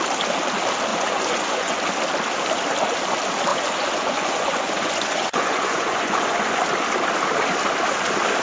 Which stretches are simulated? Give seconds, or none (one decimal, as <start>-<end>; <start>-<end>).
0.9-1.8; 3.5-6.6